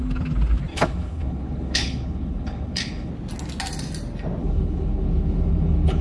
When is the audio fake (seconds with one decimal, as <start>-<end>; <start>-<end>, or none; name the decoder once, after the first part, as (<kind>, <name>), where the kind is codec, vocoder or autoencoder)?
0.7-3.1 (codec, HILCodec); 4.4-6.0